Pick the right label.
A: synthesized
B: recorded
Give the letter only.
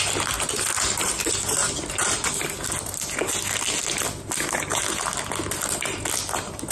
B